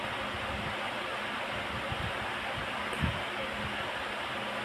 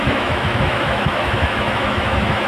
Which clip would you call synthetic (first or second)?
second